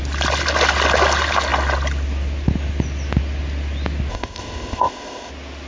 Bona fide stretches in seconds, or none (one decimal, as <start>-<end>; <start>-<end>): 0.0-4.1; 5.3-5.7